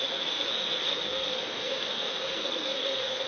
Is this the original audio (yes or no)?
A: no